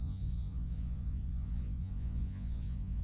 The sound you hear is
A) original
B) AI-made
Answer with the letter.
B